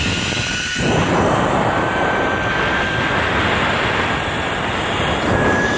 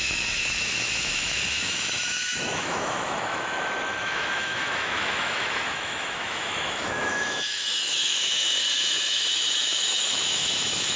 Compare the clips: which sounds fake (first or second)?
second